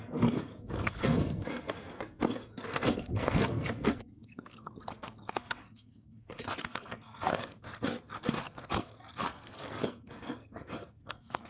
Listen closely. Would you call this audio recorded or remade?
remade